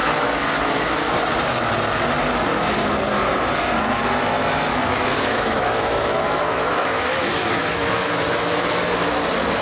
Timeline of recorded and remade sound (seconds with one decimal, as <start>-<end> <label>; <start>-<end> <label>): 0.0-1.1 remade; 1.1-4.7 recorded; 4.7-8.8 remade; 8.8-9.6 recorded